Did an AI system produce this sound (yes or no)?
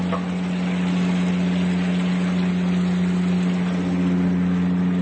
no